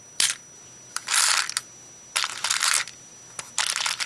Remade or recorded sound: recorded